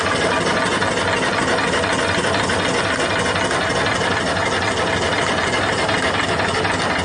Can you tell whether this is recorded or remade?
recorded